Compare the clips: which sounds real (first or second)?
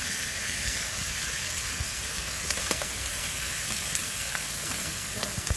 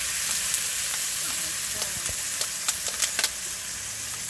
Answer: second